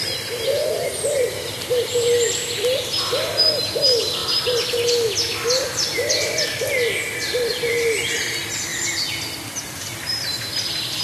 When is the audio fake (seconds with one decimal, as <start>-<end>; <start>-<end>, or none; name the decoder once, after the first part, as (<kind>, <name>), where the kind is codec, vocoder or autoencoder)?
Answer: 0.0-4.2 (vocoder, BigVGAN v2); 7.7-8.7; 9.7-11.0